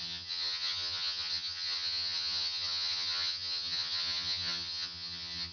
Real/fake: fake